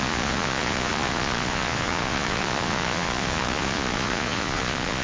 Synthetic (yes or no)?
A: yes